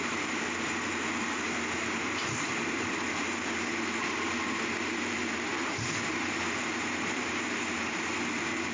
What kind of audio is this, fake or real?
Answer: fake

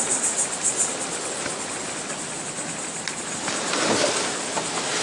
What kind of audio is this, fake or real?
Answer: real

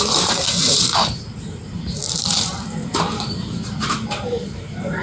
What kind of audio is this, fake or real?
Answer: fake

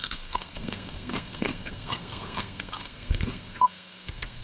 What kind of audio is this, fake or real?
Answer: fake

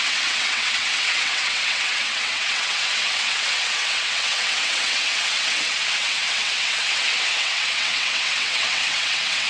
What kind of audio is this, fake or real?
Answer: fake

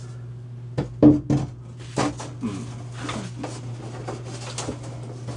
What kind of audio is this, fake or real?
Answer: real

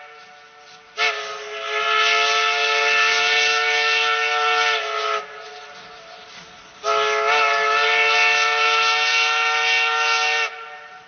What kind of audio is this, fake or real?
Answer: real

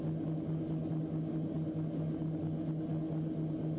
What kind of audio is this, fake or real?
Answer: real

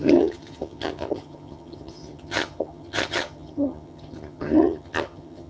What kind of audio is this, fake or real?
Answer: fake